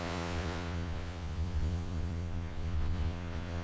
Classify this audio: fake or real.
fake